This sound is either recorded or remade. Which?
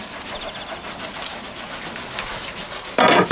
recorded